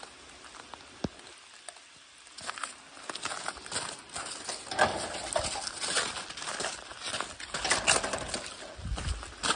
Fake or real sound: real